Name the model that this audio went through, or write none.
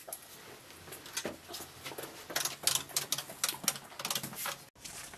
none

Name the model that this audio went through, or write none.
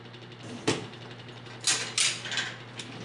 none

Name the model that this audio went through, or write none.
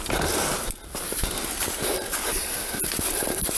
none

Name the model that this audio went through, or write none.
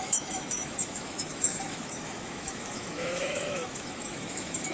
autoencoder, DAC-VAE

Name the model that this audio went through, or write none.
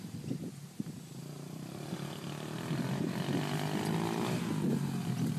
none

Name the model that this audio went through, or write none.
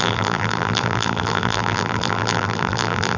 vocoder, BigVGAN v2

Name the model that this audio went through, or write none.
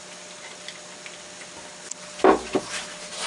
none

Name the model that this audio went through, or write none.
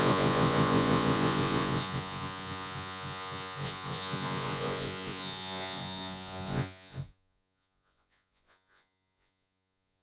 vocoder, Vocos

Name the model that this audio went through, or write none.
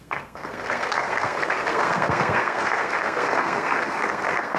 codec, SNAC